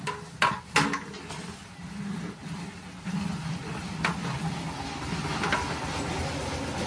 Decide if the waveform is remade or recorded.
recorded